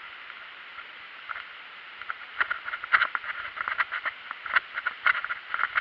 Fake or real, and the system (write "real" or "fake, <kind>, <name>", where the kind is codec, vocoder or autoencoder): real